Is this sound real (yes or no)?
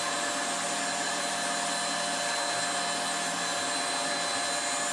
yes